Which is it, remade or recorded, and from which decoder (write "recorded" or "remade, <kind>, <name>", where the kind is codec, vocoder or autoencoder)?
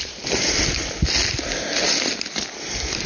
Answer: recorded